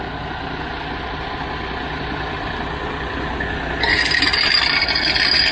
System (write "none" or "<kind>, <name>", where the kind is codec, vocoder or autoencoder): none